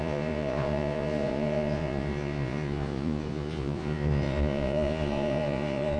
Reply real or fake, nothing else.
fake